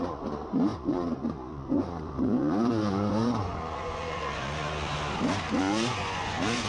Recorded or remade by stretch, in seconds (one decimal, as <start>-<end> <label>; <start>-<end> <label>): 0.0-4.9 remade; 4.9-5.6 recorded; 5.6-6.7 remade